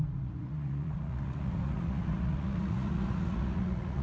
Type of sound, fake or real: fake